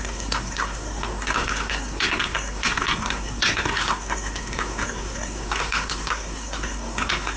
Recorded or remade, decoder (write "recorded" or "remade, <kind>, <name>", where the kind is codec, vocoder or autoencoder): remade, codec, SNAC